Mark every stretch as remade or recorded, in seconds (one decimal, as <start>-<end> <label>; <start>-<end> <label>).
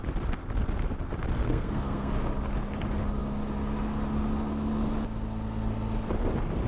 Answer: 0.0-1.4 recorded; 1.4-2.1 remade; 2.1-6.7 recorded